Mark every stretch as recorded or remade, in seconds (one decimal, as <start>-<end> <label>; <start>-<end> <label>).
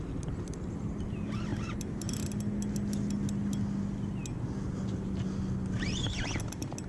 0.0-6.9 recorded